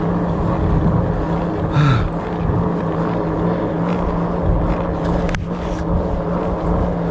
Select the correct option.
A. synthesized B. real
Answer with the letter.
B